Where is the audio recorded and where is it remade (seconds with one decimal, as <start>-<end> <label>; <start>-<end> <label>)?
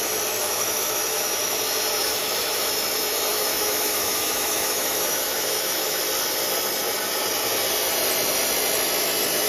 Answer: 0.0-0.4 recorded; 0.4-1.6 remade; 1.6-2.0 recorded; 2.0-2.6 remade; 2.6-3.3 recorded; 3.3-6.0 remade; 6.0-9.5 recorded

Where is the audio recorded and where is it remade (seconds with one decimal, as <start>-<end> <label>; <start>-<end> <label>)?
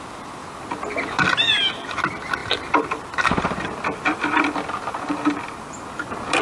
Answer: 0.0-6.4 recorded